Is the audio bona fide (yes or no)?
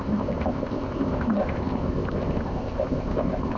no